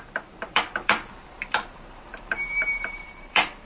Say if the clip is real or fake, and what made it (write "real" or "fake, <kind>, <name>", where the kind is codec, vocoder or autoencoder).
fake, vocoder, BigVGAN v2